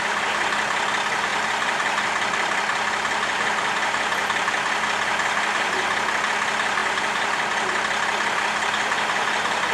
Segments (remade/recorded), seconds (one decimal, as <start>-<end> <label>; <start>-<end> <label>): 0.0-9.7 recorded